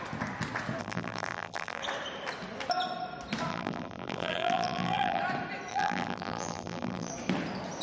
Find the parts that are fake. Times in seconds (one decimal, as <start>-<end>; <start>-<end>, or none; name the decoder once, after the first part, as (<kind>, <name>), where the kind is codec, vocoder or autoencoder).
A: 0.8-1.8 (vocoder, BigVGAN v2); 3.5-5.2; 5.7-7.1